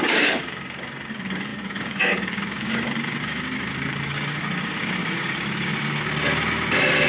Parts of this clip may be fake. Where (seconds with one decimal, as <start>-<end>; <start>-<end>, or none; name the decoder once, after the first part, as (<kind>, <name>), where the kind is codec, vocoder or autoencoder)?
0.0-5.7 (codec, DAC)